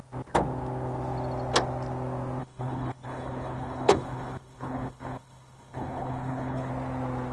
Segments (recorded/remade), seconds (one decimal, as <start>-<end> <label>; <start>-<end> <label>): 0.0-2.4 recorded; 2.4-6.7 remade; 6.7-7.3 recorded

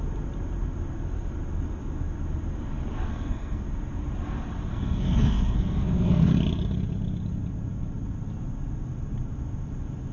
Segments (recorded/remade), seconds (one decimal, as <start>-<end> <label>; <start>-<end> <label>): 0.0-3.1 recorded; 3.1-3.6 remade; 3.6-4.7 recorded; 4.7-6.3 remade; 6.3-10.1 recorded

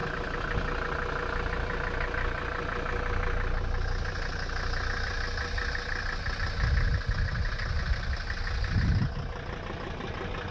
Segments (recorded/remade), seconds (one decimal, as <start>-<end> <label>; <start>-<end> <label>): 0.0-10.5 recorded